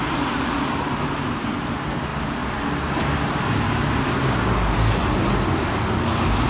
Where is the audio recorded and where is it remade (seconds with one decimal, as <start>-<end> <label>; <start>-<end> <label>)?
0.0-6.5 recorded